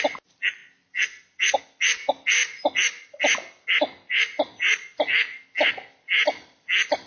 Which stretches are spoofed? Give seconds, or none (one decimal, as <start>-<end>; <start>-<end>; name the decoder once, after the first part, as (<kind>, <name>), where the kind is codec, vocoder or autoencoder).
none